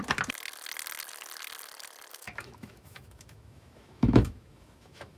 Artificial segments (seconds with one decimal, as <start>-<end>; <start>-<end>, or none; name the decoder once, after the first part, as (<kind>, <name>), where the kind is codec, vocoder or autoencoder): 2.1-5.2 (autoencoder, DAC-VAE)